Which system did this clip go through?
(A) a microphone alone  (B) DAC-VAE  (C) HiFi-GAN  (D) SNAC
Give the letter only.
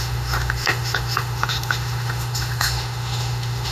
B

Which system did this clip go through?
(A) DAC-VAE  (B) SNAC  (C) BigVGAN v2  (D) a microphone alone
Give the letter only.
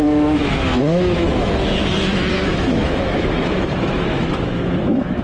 A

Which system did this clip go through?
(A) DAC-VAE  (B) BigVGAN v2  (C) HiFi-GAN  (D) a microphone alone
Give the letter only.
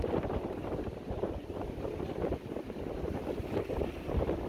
D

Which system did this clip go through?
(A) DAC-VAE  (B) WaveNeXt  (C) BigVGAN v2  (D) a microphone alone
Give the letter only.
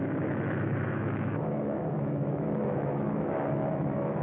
A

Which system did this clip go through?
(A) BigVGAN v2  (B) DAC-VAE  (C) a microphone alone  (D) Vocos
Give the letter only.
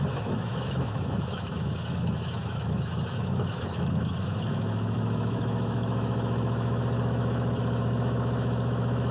B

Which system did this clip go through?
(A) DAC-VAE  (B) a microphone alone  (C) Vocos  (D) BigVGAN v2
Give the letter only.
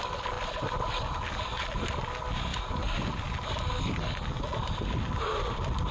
B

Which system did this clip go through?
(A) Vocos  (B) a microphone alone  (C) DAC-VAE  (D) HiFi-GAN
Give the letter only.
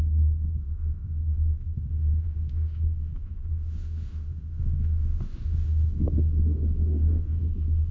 C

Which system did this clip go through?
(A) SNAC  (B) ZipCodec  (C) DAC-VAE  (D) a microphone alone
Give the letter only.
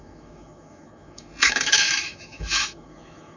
C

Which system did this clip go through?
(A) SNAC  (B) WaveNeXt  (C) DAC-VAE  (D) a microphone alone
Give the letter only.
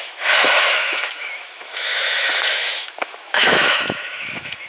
C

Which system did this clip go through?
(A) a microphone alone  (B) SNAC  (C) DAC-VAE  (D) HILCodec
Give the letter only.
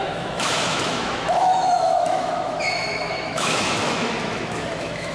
C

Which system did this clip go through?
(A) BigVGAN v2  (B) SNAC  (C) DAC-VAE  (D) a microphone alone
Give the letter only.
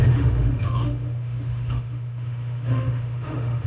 C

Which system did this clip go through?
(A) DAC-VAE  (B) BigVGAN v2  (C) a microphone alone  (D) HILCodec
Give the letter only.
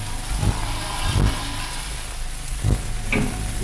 C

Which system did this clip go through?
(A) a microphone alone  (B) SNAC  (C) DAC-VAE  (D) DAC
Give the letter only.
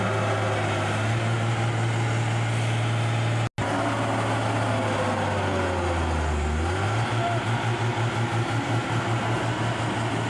A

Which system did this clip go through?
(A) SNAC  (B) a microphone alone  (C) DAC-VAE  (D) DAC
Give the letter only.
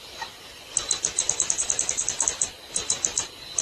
B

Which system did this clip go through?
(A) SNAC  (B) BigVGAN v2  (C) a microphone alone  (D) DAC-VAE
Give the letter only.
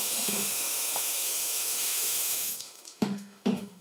D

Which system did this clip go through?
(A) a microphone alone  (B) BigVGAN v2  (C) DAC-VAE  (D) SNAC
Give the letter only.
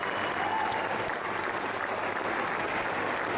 A